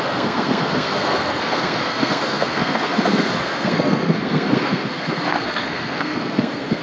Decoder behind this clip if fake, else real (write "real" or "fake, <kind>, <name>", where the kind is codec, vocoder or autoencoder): fake, codec, SNAC